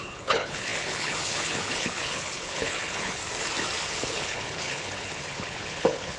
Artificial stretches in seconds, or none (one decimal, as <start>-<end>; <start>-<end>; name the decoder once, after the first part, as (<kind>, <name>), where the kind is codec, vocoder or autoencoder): 0.0-3.2 (codec, HILCodec); 3.8-6.2